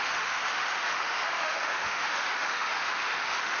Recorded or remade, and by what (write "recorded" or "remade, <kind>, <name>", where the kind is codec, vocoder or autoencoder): remade, autoencoder, DAC-VAE